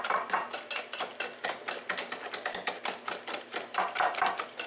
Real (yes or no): yes